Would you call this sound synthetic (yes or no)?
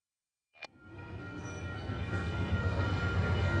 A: yes